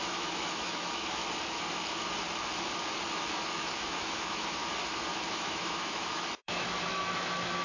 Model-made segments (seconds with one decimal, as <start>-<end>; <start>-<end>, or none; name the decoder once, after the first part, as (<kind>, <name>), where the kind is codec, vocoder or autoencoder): 0.0-1.2 (autoencoder, DAC-VAE); 3.1-4.6; 5.3-7.6